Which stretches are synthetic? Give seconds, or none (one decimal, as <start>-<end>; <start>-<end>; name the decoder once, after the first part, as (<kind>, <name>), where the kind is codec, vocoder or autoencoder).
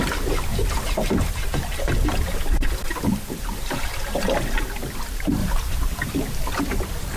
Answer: 5.4-6.6 (vocoder, BigVGAN v2)